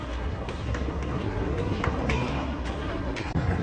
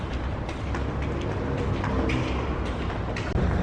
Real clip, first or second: second